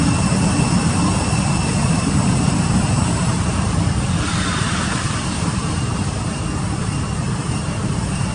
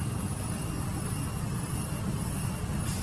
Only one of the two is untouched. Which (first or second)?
second